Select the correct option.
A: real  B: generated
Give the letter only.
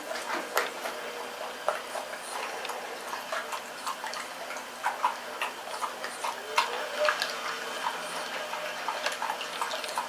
A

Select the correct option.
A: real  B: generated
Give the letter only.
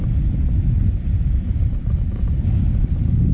A